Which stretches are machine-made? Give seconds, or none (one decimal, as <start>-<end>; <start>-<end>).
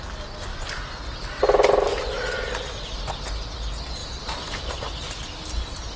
0.5-1.2; 1.9-2.9; 4.0-4.6